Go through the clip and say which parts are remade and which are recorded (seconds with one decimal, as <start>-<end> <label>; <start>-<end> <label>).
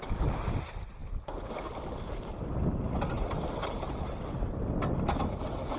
0.0-5.8 recorded